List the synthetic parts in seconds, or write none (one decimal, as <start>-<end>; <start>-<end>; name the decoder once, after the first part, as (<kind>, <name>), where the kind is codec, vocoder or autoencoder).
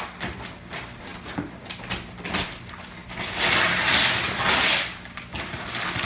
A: none